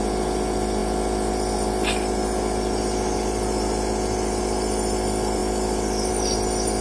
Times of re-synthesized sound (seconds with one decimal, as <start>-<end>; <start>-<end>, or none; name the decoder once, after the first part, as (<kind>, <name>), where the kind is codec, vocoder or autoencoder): none